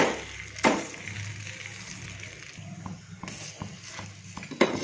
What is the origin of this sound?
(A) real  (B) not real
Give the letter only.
A